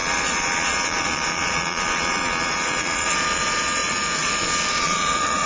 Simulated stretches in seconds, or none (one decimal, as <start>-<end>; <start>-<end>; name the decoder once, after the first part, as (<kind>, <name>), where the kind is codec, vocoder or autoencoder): 0.0-5.5 (vocoder, Vocos)